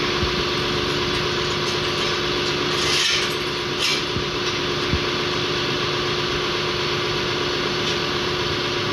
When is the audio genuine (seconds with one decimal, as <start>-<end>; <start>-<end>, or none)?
0.0-8.9